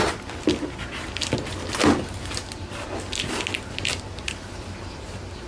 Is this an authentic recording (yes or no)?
yes